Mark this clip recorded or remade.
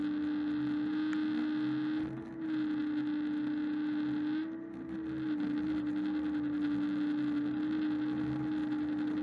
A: recorded